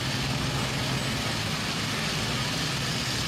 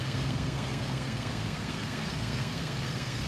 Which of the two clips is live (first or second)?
first